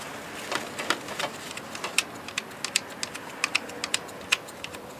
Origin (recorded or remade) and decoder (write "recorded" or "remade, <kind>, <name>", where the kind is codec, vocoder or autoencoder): recorded